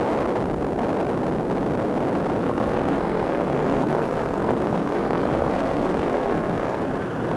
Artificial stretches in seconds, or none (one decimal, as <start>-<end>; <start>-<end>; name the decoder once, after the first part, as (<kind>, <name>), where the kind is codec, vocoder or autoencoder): 2.4-6.8 (codec, SNAC)